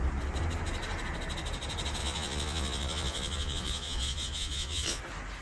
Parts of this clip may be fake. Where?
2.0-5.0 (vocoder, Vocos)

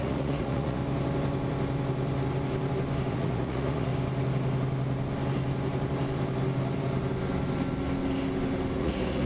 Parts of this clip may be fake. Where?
0.0-0.8 (vocoder, Vocos); 3.1-3.9; 8.8-9.3

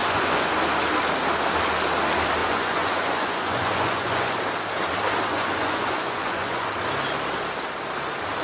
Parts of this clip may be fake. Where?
0.0-0.5 (vocoder, Vocos); 2.4-4.4; 5.3-6.7

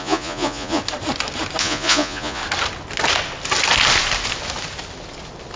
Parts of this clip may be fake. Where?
0.0-0.8 (vocoder, Vocos); 1.6-2.4

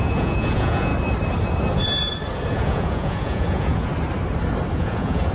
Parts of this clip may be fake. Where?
0.0-0.9 (vocoder, Vocos); 2.5-3.9; 4.7-5.3

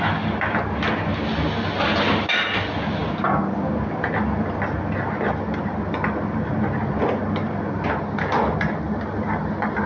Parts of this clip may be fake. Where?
none

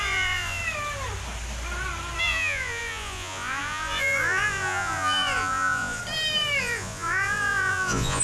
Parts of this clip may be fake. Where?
0.0-0.6 (vocoder, Vocos); 2.2-6.0; 6.6-8.2